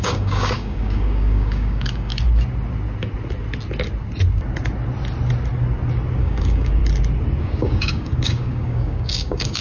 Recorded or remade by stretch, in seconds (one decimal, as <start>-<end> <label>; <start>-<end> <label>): 0.0-2.1 remade; 2.1-6.2 recorded; 6.2-6.8 remade; 6.8-7.4 recorded; 7.4-9.6 remade